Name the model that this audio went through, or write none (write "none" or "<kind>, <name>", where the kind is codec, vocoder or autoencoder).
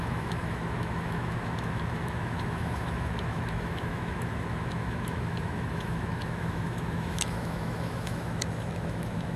autoencoder, DAC-VAE